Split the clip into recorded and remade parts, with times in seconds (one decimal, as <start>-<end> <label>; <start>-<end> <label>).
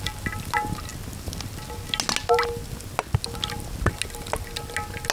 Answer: 0.0-5.1 recorded